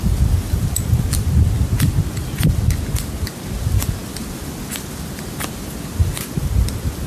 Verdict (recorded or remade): recorded